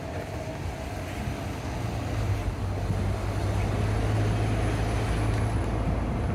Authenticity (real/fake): real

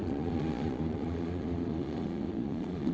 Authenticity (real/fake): fake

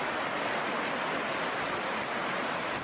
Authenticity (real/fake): real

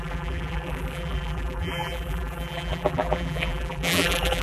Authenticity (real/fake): fake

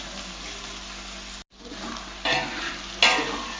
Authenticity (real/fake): real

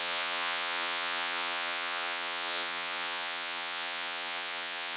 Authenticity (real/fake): fake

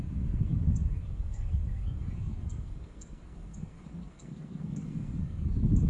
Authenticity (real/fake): fake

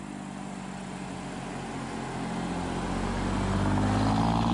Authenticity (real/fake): real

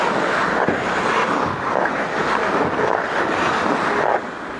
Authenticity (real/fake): real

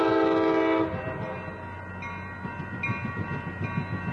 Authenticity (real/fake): real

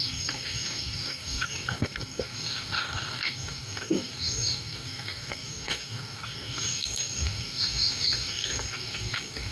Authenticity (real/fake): fake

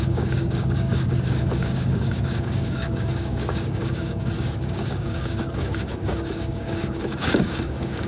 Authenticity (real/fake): fake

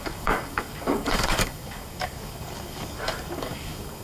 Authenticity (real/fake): fake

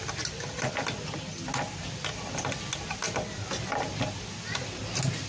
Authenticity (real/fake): real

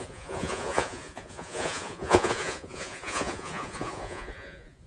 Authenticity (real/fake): fake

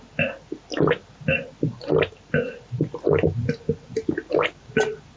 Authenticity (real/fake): real